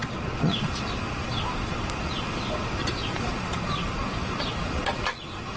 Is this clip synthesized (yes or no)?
yes